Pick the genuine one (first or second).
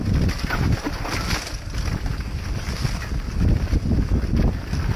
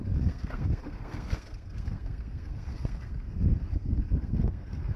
first